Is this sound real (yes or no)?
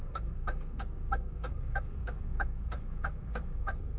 no